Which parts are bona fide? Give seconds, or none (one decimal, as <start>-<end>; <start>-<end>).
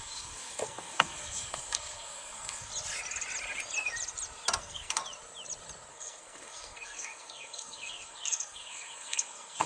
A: 2.7-4.6; 5.0-5.9